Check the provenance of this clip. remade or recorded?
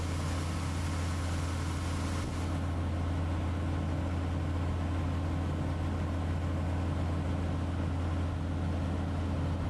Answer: recorded